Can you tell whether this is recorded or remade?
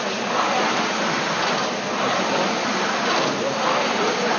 recorded